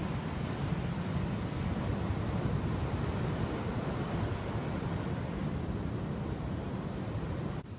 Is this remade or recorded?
recorded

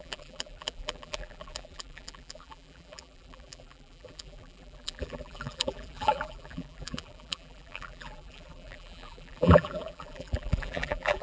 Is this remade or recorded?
remade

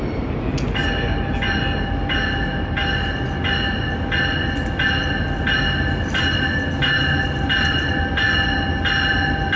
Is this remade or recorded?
recorded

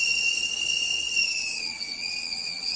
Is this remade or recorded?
remade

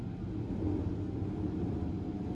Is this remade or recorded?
recorded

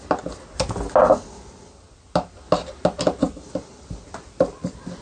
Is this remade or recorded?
recorded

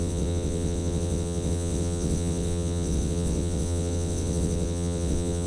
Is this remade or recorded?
remade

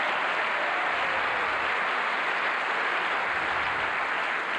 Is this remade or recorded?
recorded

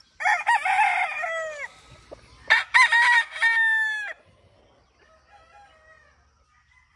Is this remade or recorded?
recorded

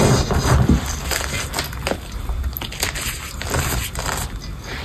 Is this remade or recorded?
recorded